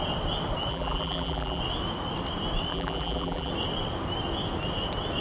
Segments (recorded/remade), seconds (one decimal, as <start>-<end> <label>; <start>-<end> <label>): 0.0-0.7 recorded; 0.7-1.6 remade; 1.6-2.7 recorded; 2.7-3.5 remade; 3.5-5.2 recorded